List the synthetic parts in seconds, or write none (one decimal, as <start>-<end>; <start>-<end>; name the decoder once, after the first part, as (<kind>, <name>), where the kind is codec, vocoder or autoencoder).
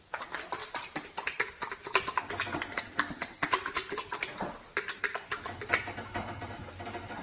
0.6-1.5 (vocoder, BigVGAN v2)